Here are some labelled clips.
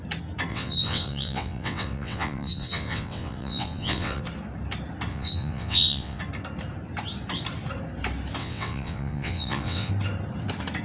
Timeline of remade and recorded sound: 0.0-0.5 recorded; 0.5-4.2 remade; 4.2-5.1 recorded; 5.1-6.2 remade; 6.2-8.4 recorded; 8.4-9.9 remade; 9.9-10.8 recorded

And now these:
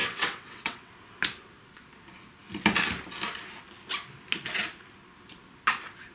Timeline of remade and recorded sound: 0.0-0.9 remade; 0.9-6.1 recorded

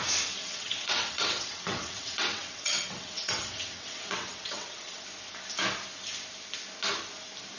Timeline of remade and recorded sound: 0.0-0.4 recorded; 0.4-5.0 remade; 5.0-7.6 recorded

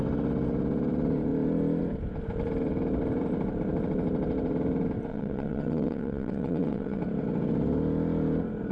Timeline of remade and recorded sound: 0.0-5.1 recorded; 5.1-7.0 remade; 7.0-8.7 recorded